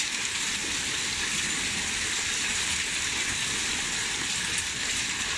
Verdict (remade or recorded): recorded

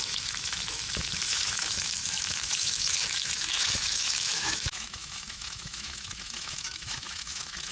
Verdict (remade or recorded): remade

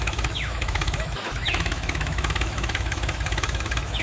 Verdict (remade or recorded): remade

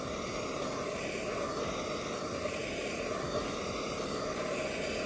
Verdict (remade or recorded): recorded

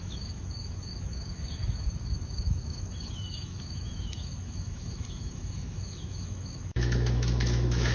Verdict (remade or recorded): remade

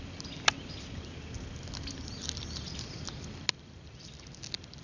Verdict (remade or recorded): recorded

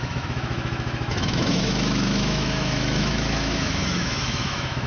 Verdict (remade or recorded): remade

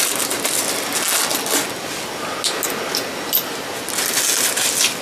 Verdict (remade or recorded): recorded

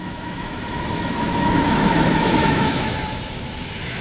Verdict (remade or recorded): remade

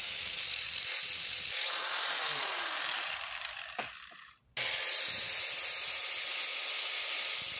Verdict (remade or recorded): recorded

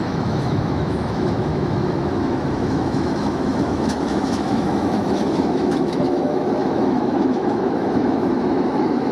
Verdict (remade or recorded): remade